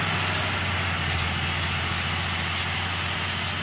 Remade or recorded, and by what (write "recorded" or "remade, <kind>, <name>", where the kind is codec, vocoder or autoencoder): recorded